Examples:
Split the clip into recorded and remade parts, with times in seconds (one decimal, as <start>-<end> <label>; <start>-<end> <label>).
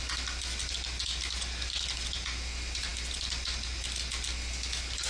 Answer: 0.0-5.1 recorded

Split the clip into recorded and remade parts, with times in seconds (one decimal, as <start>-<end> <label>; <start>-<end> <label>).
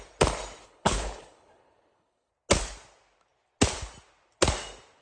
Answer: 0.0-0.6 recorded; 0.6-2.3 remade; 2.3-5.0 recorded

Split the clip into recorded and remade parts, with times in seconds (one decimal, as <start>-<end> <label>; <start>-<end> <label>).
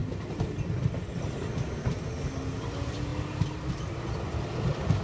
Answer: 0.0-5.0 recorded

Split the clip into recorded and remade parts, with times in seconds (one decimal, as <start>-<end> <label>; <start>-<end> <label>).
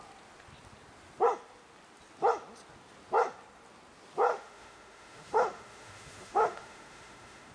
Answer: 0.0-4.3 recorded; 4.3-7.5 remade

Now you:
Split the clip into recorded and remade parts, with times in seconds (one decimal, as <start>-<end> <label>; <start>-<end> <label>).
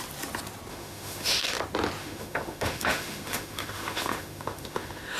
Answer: 0.0-0.7 recorded; 0.7-1.6 remade; 1.6-2.0 recorded; 2.0-5.2 remade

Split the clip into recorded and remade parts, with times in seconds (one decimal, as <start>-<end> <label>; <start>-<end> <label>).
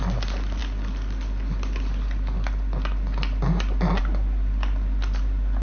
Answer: 0.0-5.6 recorded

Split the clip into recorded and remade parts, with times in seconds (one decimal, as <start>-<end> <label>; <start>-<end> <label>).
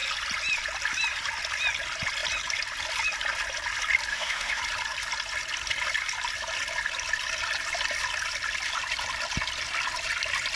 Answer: 0.0-4.1 recorded; 4.1-4.6 remade; 4.6-10.6 recorded